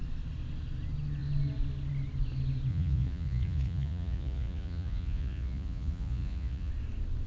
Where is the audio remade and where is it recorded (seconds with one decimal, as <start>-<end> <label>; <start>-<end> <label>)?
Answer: 0.0-2.7 recorded; 2.7-6.7 remade; 6.7-7.3 recorded